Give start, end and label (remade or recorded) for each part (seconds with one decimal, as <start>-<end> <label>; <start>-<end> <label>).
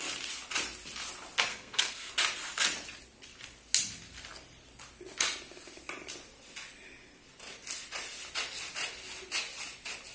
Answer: 0.0-1.5 recorded; 1.5-2.1 remade; 2.1-10.1 recorded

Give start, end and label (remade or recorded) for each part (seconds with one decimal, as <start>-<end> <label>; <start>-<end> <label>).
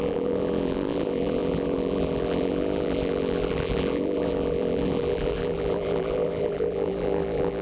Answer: 0.0-7.6 remade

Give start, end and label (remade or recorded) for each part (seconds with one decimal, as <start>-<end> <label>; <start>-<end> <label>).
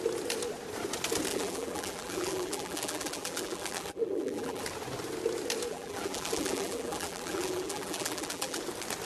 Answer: 0.0-1.3 recorded; 1.3-4.6 remade; 4.6-5.7 recorded; 5.7-8.6 remade; 8.6-9.1 recorded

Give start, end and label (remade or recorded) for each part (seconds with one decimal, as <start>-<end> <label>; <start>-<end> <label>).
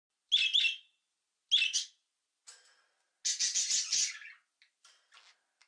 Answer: 0.0-5.7 recorded